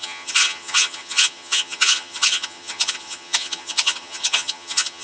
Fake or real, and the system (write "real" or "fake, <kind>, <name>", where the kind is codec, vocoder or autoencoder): fake, vocoder, HiFi-GAN